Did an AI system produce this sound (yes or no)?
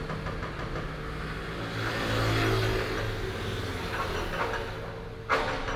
no